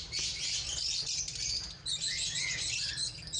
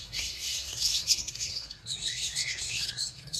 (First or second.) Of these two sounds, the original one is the first